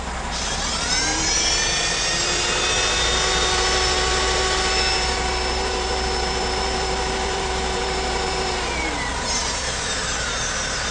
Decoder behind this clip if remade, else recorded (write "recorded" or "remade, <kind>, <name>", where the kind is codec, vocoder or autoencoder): remade, vocoder, BigVGAN v2